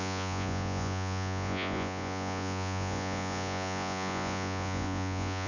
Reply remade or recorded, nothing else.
remade